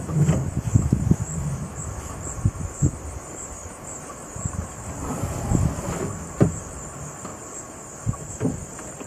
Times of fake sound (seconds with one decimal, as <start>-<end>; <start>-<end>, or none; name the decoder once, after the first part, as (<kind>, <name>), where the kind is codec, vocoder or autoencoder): none